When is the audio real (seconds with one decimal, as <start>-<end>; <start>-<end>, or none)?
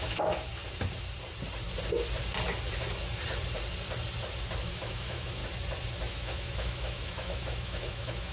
0.5-4.7; 5.4-6.1